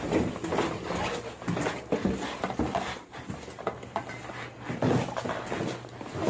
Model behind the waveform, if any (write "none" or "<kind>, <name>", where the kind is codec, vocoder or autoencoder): none